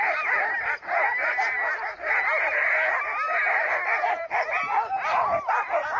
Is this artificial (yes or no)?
no